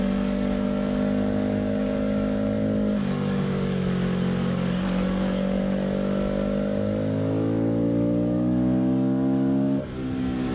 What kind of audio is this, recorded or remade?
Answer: remade